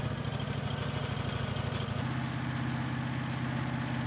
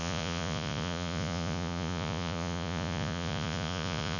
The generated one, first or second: second